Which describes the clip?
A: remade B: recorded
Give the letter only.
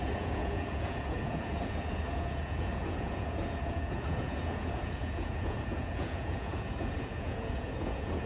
A